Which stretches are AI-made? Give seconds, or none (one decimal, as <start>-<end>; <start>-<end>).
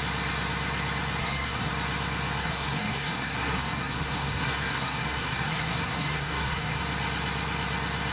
1.2-1.7; 2.4-6.8